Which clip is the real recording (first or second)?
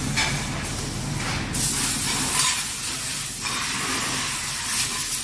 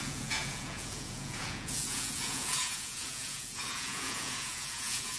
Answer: first